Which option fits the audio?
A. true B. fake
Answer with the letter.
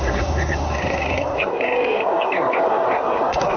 B